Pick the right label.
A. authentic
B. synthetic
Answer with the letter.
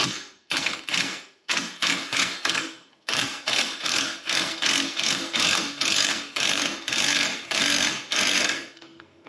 B